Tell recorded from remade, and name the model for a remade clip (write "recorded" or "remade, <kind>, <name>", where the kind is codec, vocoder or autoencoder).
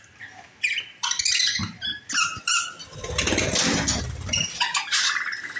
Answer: recorded